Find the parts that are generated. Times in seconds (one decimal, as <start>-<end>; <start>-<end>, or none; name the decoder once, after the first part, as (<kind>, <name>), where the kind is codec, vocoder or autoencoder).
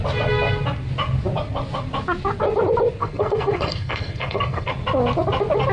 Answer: 3.0-4.7 (codec, SNAC)